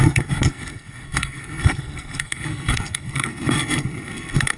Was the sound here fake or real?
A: fake